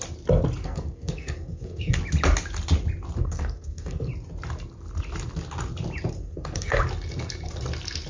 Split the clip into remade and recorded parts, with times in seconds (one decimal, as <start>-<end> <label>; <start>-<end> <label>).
0.0-0.6 recorded; 0.6-2.0 remade; 2.0-3.2 recorded; 3.2-4.1 remade; 4.1-6.2 recorded; 6.2-6.8 remade; 6.8-8.1 recorded